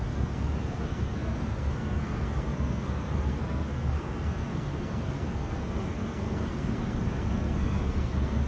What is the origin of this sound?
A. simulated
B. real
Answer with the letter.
A